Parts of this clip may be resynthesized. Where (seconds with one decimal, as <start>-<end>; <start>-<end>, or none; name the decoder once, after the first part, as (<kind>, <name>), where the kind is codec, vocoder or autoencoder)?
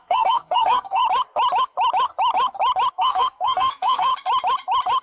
0.0-1.0 (codec, SNAC); 2.9-4.1